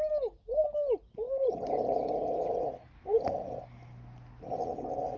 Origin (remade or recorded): recorded